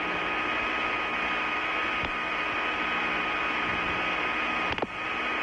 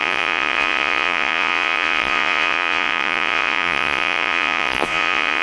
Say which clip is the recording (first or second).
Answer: first